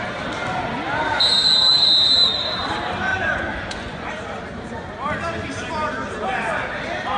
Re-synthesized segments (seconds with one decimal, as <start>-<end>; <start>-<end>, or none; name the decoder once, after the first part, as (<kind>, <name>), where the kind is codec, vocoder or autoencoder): 3.1-4.1 (vocoder, Vocos)